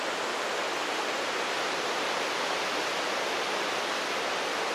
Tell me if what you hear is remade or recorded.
remade